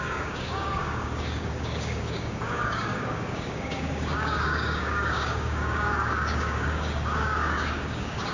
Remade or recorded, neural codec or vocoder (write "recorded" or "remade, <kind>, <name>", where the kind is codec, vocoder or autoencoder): remade, codec, DAC